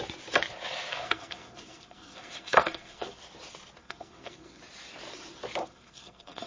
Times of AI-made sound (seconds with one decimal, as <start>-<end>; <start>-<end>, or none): 0.9-3.2; 3.8-4.6; 5.6-6.5